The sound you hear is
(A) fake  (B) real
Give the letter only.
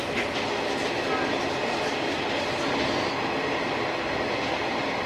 B